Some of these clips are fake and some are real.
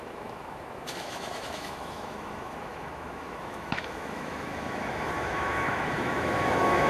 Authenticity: fake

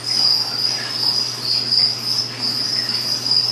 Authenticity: real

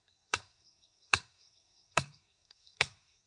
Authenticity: fake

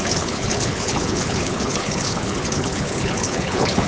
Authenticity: fake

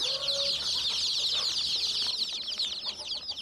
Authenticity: real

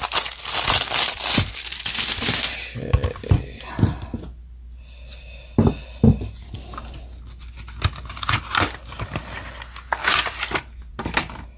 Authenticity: real